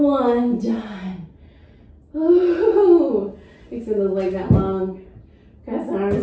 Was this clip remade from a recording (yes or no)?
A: no